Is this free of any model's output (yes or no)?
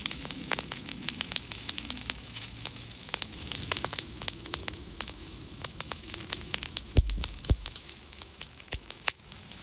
no